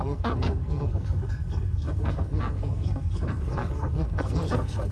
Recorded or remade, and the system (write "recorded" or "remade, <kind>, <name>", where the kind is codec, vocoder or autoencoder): remade, codec, SNAC